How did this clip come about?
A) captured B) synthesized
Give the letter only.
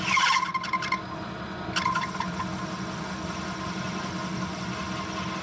A